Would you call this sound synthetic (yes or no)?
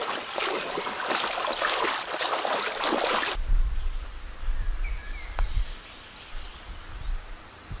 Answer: no